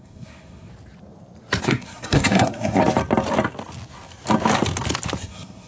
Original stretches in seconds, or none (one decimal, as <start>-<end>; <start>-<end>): 0.7-1.6; 2.8-5.2

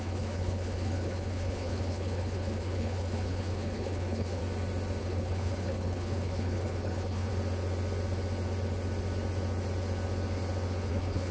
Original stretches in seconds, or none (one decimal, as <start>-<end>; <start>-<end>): 4.4-5.0; 7.3-10.9

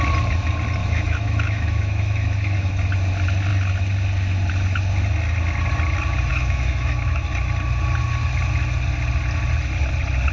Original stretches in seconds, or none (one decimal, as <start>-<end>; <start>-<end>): 0.0-0.8; 2.7-6.3; 7.2-10.3

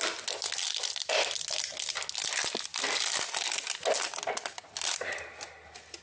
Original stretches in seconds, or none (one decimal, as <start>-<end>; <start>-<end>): 0.0-6.0

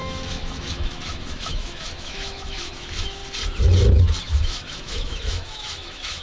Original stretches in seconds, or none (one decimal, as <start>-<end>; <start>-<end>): 3.2-4.2

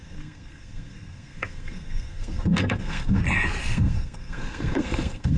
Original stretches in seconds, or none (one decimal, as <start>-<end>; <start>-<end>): 3.2-3.6